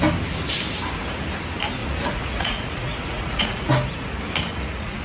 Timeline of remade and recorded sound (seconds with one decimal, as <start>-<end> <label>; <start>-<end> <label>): 0.0-1.8 recorded; 1.8-3.7 remade; 3.7-4.5 recorded; 4.5-5.0 remade